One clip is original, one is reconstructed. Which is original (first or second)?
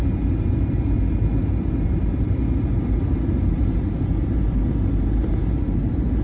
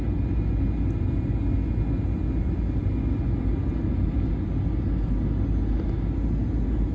second